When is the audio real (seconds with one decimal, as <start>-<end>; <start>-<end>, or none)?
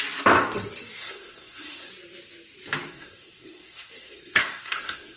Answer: 0.0-1.0; 1.9-2.9